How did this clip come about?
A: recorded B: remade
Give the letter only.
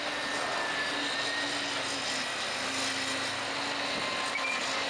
A